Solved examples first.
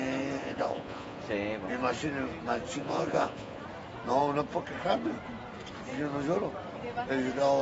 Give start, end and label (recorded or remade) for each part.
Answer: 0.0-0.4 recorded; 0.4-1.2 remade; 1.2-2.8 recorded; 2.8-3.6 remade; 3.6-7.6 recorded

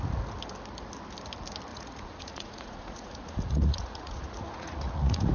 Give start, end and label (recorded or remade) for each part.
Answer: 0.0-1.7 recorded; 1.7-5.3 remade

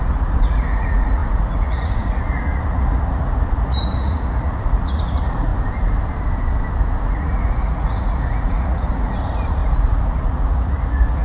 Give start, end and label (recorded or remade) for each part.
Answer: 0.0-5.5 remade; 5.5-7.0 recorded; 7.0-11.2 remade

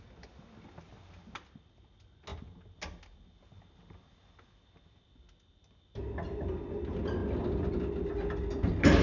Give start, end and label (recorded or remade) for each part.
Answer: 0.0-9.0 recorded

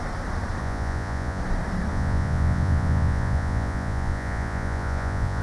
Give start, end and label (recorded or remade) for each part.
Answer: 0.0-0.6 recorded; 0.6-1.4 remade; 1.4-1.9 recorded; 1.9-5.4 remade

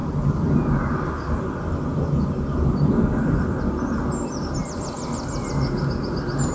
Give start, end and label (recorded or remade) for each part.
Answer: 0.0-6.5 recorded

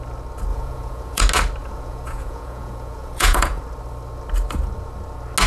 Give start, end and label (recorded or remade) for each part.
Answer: 0.0-0.5 recorded; 0.5-1.2 remade; 1.2-1.6 recorded; 1.6-3.6 remade; 3.6-5.5 recorded

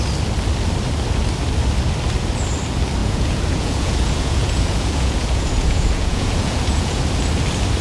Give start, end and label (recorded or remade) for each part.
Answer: 0.0-3.0 recorded; 3.0-7.0 remade; 7.0-7.8 recorded